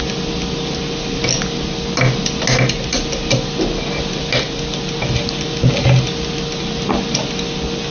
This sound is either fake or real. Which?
real